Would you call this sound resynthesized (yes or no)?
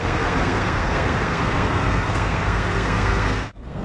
yes